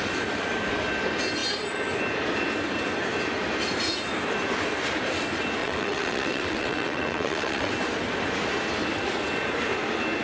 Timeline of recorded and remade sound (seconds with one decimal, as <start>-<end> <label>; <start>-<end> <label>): 0.0-5.6 recorded; 5.6-7.7 remade; 7.7-10.2 recorded